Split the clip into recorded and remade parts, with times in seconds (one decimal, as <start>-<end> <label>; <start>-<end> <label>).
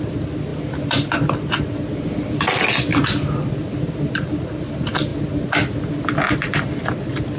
0.0-0.5 recorded; 0.5-1.5 remade; 1.5-2.9 recorded; 2.9-4.6 remade; 4.6-7.4 recorded